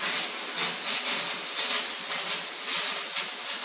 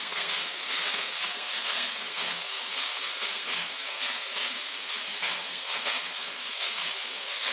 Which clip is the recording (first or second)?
first